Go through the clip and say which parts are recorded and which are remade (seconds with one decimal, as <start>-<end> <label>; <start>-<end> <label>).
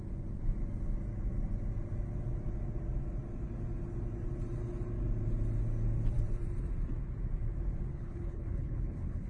0.0-7.9 recorded; 7.9-9.3 remade